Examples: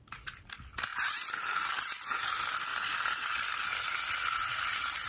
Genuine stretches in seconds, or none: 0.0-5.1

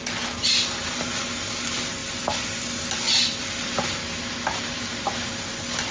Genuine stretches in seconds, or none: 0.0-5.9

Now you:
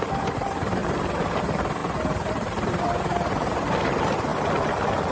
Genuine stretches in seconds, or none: 4.3-5.1

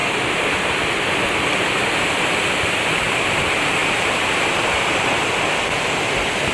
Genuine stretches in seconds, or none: 0.8-3.8; 5.3-6.5

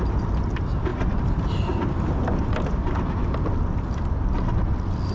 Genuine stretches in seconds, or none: 0.0-5.1

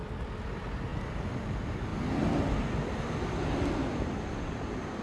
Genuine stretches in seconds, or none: 0.0-0.5; 0.9-1.4; 1.9-4.0

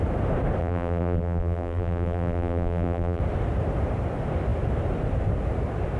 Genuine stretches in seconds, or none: 0.0-0.6; 3.2-6.0

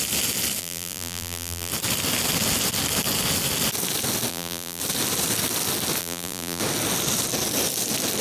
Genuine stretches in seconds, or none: 0.0-0.6; 1.7-4.3; 4.8-6.0; 6.6-8.2